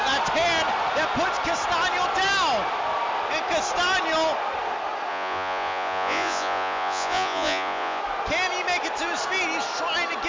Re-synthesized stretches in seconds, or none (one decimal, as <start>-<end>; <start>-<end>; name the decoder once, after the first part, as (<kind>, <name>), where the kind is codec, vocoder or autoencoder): 5.1-8.0 (vocoder, Vocos)